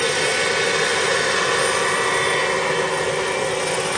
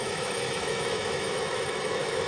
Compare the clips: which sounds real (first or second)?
first